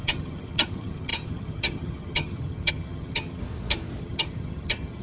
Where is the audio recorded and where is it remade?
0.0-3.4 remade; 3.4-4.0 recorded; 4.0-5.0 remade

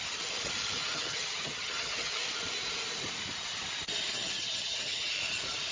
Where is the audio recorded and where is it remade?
0.0-0.8 recorded; 0.8-2.1 remade; 2.1-4.1 recorded; 4.1-5.1 remade; 5.1-5.7 recorded

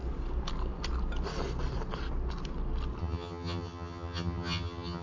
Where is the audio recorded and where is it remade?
0.0-3.0 recorded; 3.0-5.0 remade

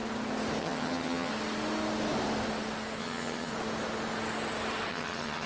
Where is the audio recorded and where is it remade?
0.0-0.6 recorded; 0.6-1.3 remade; 1.3-3.0 recorded; 3.0-3.5 remade; 3.5-4.9 recorded; 4.9-5.5 remade

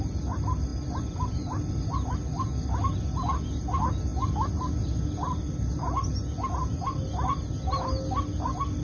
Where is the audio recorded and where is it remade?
0.0-8.8 recorded

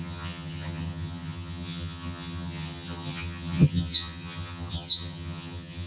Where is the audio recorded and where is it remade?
0.0-5.9 remade